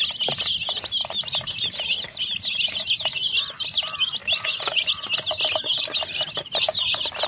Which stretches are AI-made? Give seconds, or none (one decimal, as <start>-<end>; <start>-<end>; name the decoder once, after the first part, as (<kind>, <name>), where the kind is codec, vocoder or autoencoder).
none